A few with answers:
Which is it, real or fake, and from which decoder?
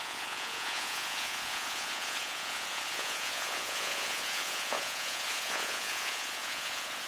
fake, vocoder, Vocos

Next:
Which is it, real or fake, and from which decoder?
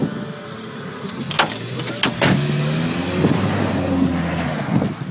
real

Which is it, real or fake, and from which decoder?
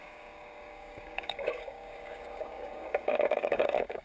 fake, codec, DAC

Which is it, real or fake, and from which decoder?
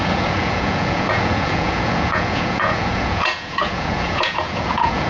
fake, vocoder, Vocos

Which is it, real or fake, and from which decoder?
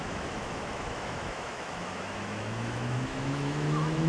fake, autoencoder, DAC-VAE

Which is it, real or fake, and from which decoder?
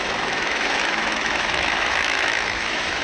fake, autoencoder, DAC-VAE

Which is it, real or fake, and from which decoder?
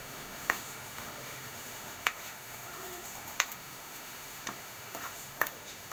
fake, autoencoder, DAC-VAE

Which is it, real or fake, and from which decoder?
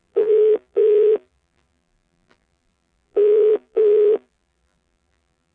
fake, vocoder, BigVGAN v2